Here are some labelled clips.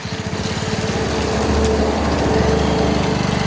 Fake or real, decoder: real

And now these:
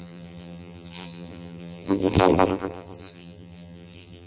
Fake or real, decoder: fake, vocoder, BigVGAN v2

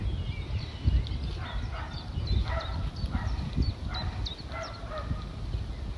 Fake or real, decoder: real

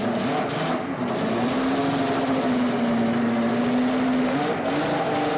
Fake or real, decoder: real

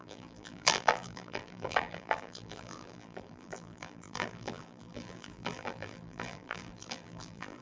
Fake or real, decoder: fake, vocoder, BigVGAN v2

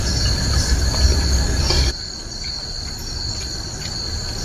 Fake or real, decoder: real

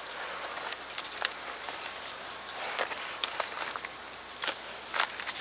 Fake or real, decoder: real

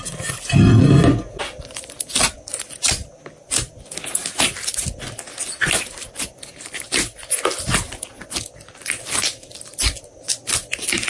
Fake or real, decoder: real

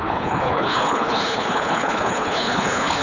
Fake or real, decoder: fake, codec, HILCodec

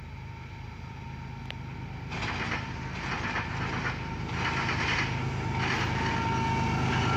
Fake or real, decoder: real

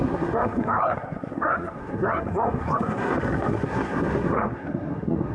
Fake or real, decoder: fake, codec, SNAC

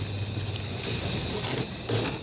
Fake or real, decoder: real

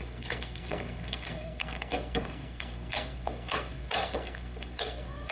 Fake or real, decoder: fake, codec, SNAC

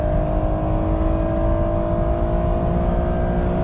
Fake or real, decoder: real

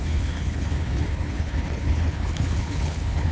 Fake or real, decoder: fake, codec, HILCodec